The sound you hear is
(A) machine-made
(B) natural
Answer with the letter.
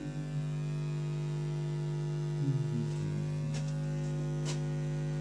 B